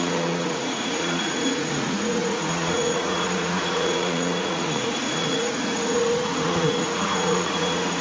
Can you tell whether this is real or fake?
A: fake